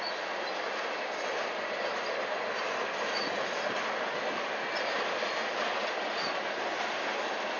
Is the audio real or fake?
real